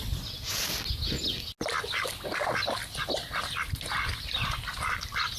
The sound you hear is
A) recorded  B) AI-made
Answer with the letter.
A